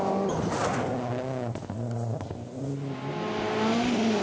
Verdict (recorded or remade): recorded